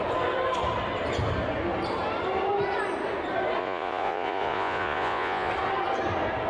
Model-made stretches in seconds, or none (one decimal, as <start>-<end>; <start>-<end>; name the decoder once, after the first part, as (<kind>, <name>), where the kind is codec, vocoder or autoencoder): 3.6-5.5 (vocoder, Vocos)